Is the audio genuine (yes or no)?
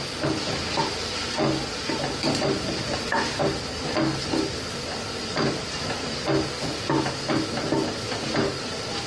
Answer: yes